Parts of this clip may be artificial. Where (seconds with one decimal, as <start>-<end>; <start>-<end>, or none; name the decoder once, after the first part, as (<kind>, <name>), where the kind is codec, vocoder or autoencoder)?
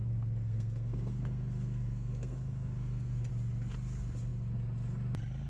0.0-3.3 (codec, SNAC)